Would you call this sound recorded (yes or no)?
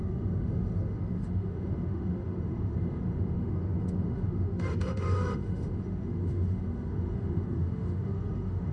no